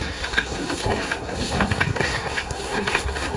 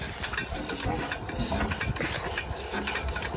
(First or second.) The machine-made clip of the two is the first